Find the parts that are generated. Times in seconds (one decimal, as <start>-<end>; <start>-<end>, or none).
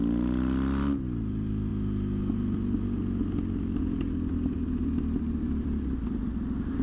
none